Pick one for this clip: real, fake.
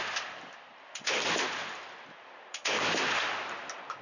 real